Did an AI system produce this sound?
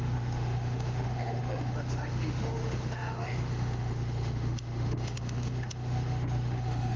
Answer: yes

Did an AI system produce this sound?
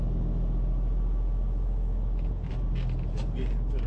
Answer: no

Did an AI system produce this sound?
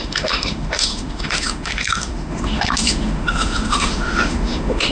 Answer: yes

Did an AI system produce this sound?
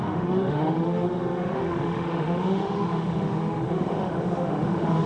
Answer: yes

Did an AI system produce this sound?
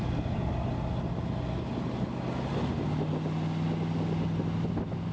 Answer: no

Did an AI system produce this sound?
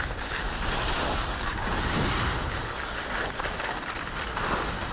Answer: no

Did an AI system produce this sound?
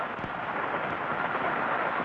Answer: no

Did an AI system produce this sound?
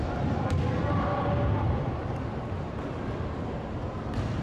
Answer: no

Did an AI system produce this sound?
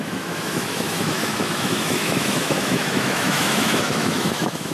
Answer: yes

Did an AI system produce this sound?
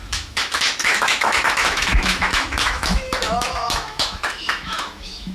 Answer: yes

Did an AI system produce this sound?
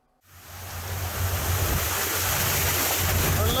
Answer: no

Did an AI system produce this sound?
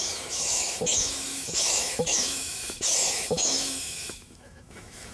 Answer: yes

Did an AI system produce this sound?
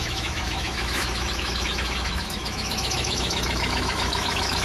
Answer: yes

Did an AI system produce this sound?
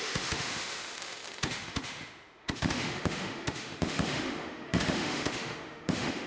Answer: yes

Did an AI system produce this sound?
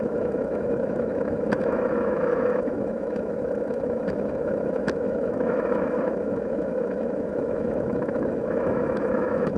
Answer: yes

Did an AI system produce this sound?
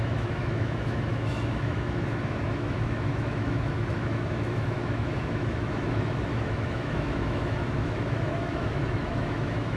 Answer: yes